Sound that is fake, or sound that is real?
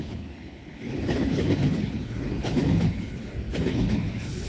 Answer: fake